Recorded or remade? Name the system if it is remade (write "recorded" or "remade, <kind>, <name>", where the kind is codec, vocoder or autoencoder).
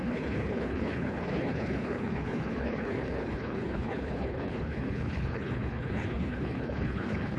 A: remade, codec, HILCodec